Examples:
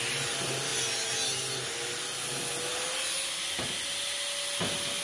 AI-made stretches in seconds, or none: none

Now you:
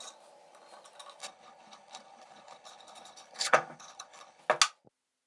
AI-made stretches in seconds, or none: 1.2-4.4 (codec, HILCodec)

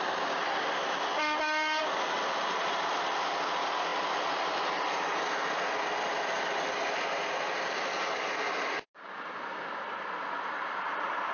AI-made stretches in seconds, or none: none

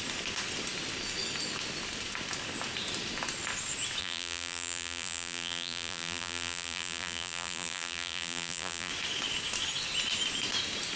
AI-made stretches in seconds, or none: 4.0-8.9 (vocoder, BigVGAN v2)

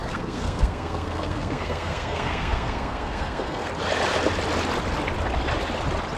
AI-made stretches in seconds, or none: 0.0-3.7 (codec, SNAC)

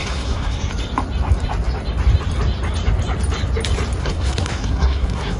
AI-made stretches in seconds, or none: 0.0-0.7 (codec, SNAC); 4.0-5.4

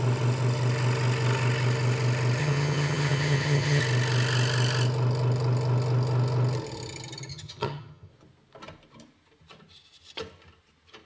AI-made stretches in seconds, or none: 2.4-3.8 (vocoder, HiFi-GAN); 7.3-8.1

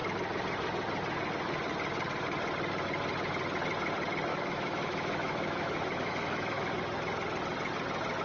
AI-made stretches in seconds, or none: 4.3-6.7 (autoencoder, DAC-VAE)